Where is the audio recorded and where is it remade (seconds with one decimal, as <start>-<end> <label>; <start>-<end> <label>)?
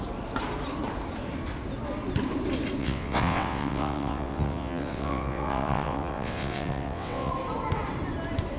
0.0-2.8 recorded; 2.8-7.3 remade; 7.3-8.6 recorded